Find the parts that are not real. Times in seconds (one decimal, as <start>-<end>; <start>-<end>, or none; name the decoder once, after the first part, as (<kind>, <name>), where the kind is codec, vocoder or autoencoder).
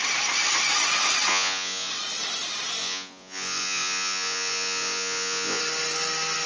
1.3-1.9 (vocoder, Vocos); 2.8-5.6